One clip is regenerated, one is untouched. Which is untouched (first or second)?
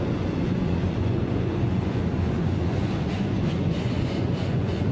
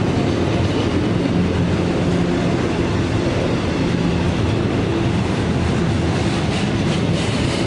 second